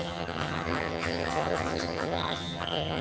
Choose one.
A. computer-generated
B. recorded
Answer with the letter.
A